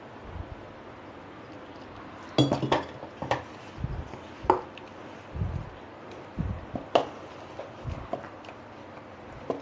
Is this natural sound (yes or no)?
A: yes